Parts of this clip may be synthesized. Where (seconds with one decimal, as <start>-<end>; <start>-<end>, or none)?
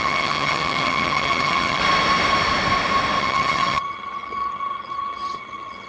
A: 0.0-1.8; 3.2-5.9